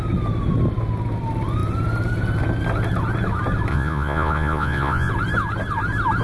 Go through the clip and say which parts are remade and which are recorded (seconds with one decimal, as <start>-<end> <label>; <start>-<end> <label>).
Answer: 0.0-3.7 recorded; 3.7-5.1 remade; 5.1-6.2 recorded